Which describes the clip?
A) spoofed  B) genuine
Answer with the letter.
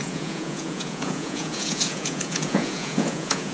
A